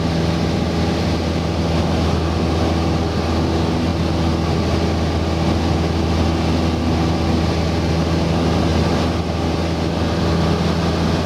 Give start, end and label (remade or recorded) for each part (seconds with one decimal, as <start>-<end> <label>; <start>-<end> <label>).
0.0-11.3 recorded